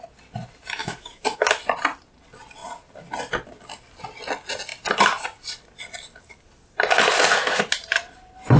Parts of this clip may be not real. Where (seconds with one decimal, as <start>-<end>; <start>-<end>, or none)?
0.8-1.5